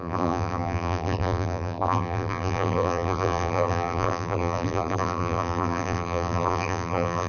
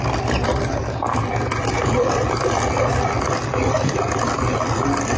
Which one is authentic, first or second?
second